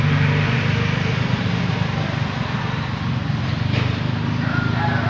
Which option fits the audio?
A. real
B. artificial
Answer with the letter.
B